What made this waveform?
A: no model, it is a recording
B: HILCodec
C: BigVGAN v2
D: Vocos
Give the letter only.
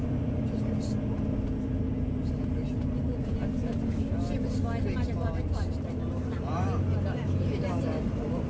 A